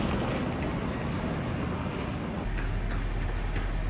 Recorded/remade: recorded